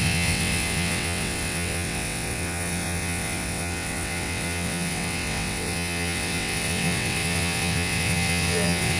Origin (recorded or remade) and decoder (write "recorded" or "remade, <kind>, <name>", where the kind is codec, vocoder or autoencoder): remade, vocoder, WaveNeXt